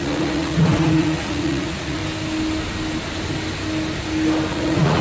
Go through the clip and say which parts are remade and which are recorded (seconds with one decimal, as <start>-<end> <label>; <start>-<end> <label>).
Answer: 0.0-2.0 remade; 2.0-4.5 recorded; 4.5-5.0 remade